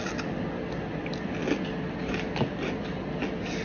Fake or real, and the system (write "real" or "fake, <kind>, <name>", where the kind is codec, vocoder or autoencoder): real